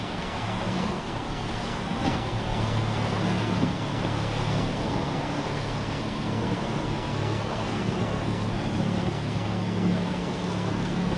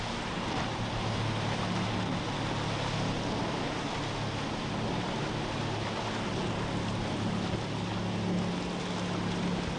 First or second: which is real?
second